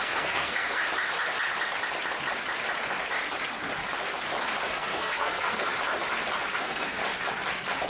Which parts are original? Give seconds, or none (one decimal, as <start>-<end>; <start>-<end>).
0.8-4.7; 5.7-6.5; 7.0-7.9